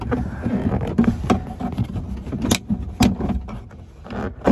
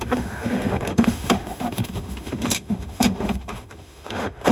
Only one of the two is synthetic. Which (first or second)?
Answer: second